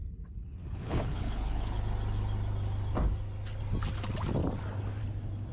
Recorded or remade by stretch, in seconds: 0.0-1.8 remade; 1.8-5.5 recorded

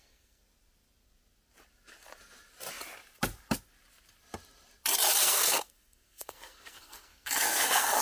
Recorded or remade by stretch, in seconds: 0.0-0.4 remade; 0.4-5.2 recorded; 5.2-8.0 remade

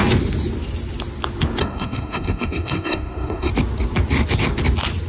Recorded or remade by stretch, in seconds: 0.0-1.6 recorded; 1.6-3.5 remade; 3.5-5.1 recorded

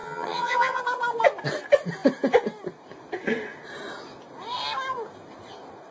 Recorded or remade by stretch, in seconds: 0.0-0.8 remade; 0.8-5.9 recorded

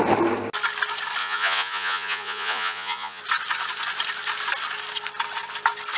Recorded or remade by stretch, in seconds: 0.0-1.2 recorded; 1.2-3.2 remade; 3.2-6.0 recorded